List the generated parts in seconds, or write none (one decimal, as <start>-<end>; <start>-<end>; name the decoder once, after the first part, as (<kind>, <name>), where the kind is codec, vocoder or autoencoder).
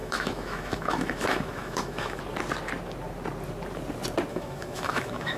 0.0-2.2 (autoencoder, DAC-VAE); 4.3-5.4